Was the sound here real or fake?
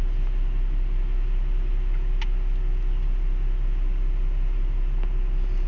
real